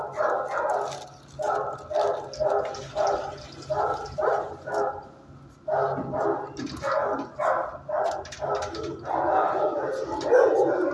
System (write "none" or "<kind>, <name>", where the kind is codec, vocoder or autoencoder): none